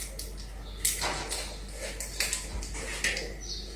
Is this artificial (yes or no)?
no